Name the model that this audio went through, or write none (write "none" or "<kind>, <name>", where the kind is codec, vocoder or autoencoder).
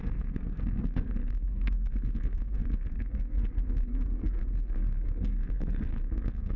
codec, SNAC